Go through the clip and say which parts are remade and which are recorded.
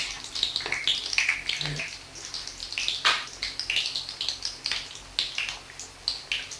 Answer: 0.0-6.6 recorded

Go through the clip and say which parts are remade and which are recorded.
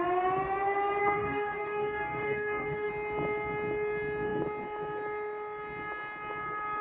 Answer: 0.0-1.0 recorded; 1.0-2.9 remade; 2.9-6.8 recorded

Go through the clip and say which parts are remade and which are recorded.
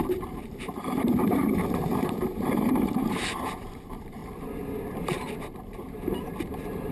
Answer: 0.0-4.2 remade; 4.2-5.0 recorded; 5.0-6.9 remade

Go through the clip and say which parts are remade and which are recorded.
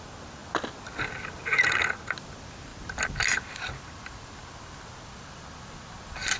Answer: 0.0-6.4 recorded